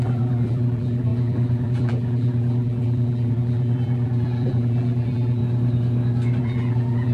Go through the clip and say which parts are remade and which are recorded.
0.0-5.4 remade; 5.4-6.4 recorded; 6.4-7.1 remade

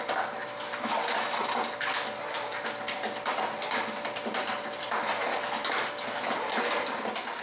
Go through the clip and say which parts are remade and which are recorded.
0.0-0.4 recorded; 0.4-4.8 remade; 4.8-7.4 recorded